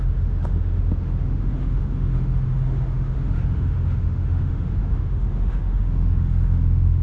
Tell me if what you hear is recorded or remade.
remade